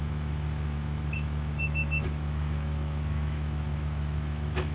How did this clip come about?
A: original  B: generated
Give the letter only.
B